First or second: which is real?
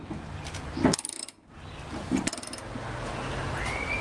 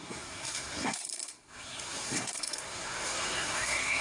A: first